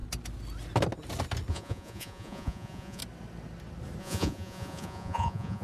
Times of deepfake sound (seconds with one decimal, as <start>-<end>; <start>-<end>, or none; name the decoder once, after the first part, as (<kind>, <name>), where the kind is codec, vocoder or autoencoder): 1.5-3.0 (vocoder, Vocos); 4.0-5.6